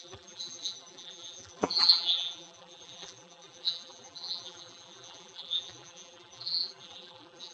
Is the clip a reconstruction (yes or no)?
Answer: yes